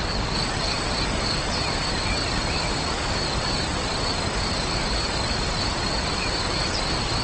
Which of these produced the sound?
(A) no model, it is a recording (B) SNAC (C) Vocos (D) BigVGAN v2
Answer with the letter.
D